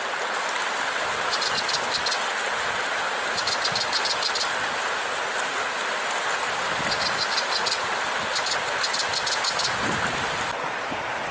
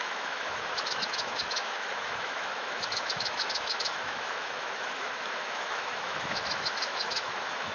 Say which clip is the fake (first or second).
second